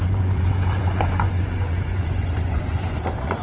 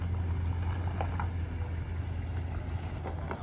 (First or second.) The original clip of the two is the second